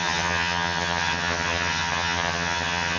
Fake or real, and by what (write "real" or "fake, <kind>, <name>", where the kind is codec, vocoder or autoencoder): fake, vocoder, HiFi-GAN